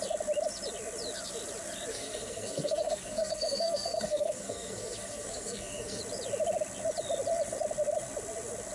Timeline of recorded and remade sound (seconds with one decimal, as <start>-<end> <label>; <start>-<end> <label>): 0.0-1.9 recorded; 1.9-6.0 remade; 6.0-8.7 recorded